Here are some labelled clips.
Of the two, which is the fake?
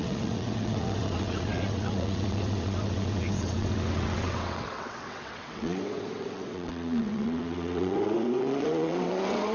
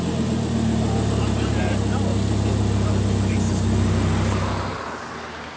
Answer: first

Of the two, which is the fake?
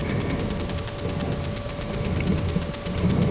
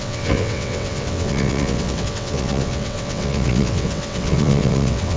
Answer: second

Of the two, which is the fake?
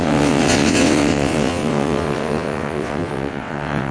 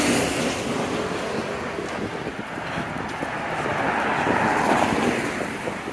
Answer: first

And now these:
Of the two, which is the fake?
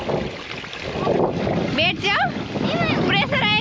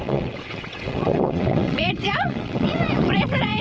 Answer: second